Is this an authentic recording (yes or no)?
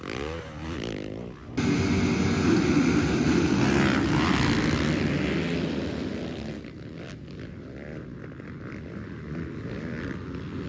yes